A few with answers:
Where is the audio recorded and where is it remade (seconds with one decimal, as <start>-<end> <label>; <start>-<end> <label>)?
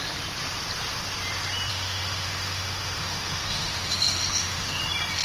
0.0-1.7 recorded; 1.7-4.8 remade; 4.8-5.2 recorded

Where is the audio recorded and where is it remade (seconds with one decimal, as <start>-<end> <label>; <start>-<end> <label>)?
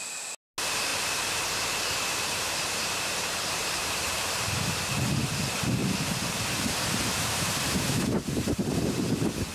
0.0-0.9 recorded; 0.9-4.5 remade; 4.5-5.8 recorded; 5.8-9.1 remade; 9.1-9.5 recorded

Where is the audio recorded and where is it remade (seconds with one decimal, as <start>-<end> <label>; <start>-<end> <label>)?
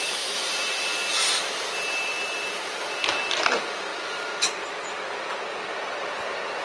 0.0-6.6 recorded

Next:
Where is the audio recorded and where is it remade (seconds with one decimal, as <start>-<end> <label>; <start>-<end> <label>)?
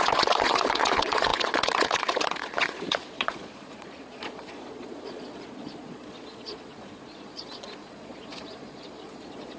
0.0-9.6 remade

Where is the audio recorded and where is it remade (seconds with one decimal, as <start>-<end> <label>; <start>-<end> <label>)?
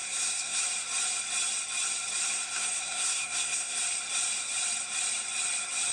0.0-0.6 remade; 0.6-2.3 recorded; 2.3-3.8 remade; 3.8-5.9 recorded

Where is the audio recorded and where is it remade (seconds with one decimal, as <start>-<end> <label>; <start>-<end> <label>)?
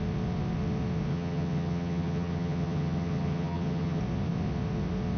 0.0-1.1 recorded; 1.1-4.0 remade; 4.0-5.2 recorded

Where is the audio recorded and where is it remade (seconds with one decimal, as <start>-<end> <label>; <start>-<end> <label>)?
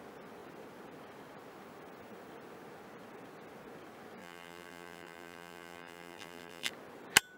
0.0-4.2 recorded; 4.2-6.7 remade; 6.7-7.4 recorded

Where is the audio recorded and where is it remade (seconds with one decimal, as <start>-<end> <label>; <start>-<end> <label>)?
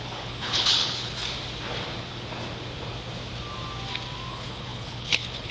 0.0-1.2 remade; 1.2-4.3 recorded; 4.3-5.5 remade